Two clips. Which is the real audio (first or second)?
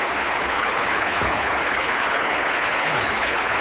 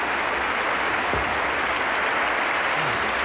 second